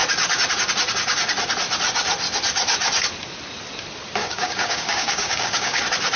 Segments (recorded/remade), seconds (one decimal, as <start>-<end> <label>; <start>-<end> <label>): 0.0-4.2 recorded; 4.2-5.8 remade; 5.8-6.2 recorded